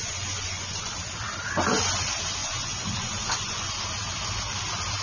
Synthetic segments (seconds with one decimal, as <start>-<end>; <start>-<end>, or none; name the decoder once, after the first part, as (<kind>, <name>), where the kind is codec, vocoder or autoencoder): 0.0-0.9 (vocoder, Vocos); 2.4-3.7